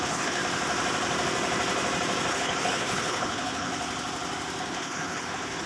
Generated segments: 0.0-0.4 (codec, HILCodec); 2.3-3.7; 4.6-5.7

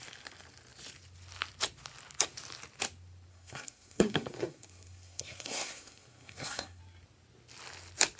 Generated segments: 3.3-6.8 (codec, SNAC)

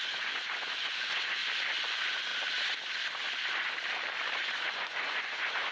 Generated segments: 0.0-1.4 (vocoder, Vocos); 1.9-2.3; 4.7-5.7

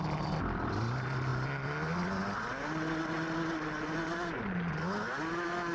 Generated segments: none

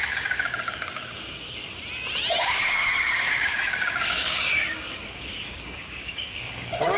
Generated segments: 0.0-1.6 (codec, DAC); 2.4-7.0